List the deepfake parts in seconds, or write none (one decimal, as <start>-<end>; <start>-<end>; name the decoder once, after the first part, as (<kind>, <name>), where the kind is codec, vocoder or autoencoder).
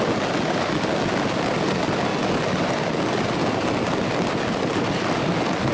none